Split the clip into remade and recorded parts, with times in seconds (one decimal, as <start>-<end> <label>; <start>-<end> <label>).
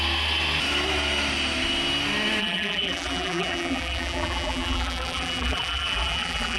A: 0.0-2.4 recorded; 2.4-6.6 remade